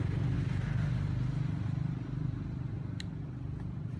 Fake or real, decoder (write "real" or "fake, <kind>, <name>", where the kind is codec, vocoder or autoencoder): real